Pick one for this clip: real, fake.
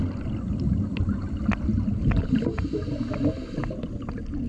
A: real